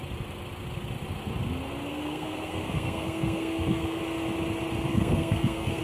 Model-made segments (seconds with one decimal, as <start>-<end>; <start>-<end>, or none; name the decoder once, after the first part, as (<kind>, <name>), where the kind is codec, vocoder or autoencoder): 1.9-4.0 (codec, SNAC); 4.9-5.8